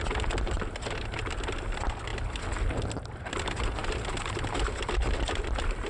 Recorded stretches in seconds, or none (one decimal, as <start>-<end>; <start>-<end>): 0.0-5.9